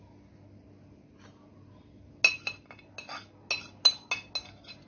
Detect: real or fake real